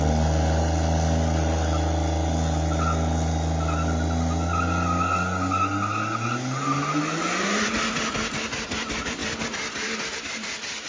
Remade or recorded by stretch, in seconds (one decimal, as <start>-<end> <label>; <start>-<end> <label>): 0.0-10.9 recorded